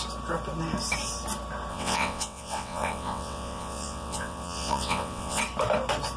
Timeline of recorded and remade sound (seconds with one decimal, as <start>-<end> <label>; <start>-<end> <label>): 0.0-1.7 recorded; 1.7-5.4 remade; 5.4-6.2 recorded